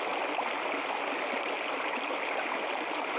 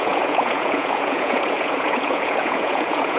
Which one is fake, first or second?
second